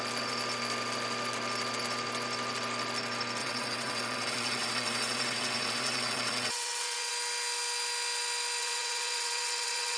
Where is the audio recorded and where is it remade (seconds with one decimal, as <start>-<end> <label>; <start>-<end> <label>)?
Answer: 0.0-3.4 recorded; 3.4-7.1 remade; 7.1-8.6 recorded; 8.6-10.0 remade